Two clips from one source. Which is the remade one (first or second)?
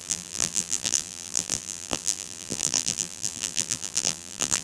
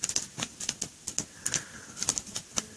first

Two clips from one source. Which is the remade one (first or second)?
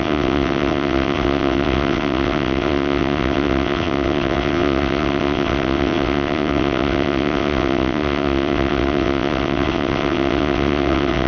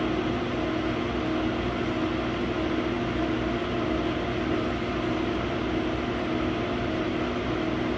first